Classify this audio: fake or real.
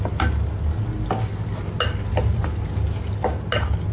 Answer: real